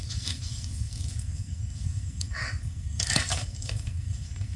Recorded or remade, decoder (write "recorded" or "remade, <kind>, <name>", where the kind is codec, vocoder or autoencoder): remade, codec, SNAC